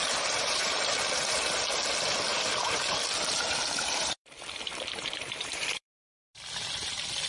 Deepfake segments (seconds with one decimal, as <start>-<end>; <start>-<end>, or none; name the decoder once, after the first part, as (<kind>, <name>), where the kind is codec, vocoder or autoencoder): 0.0-1.4 (vocoder, BigVGAN v2); 2.3-6.7